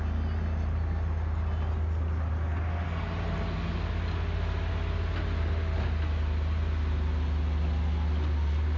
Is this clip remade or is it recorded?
recorded